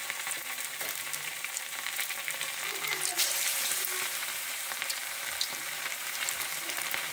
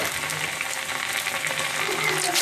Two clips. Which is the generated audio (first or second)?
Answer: first